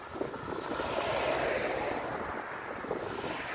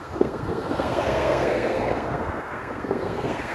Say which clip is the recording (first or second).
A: first